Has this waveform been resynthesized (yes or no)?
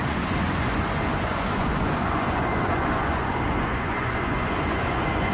yes